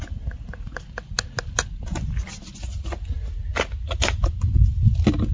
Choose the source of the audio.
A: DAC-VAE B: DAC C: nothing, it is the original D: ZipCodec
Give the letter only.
C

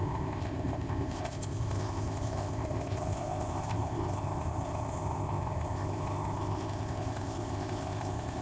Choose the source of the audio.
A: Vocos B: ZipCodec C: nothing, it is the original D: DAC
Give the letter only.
B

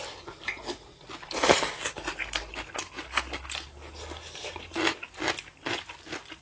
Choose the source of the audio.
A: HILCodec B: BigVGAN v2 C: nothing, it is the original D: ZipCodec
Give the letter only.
C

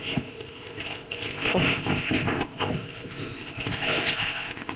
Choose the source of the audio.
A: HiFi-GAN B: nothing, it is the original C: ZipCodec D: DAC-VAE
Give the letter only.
C